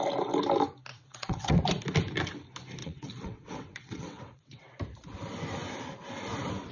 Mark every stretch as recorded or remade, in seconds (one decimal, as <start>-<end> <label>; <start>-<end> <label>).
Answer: 0.0-0.9 recorded; 0.9-1.5 remade; 1.5-2.8 recorded; 2.8-4.8 remade; 4.8-6.7 recorded